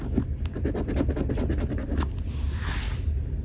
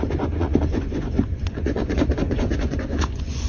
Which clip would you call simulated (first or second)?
second